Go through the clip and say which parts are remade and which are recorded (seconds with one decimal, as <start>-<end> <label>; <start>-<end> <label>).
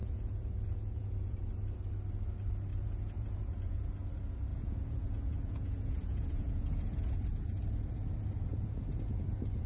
0.0-1.4 remade; 1.4-2.7 recorded; 2.7-3.9 remade; 3.9-4.5 recorded; 4.5-7.2 remade; 7.2-8.5 recorded; 8.5-9.7 remade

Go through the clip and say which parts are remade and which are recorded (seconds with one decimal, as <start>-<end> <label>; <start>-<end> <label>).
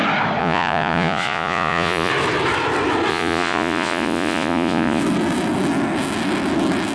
0.0-0.4 recorded; 0.4-2.1 remade; 2.1-3.1 recorded; 3.1-5.0 remade; 5.0-6.9 recorded